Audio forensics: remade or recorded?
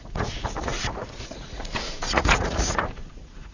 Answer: remade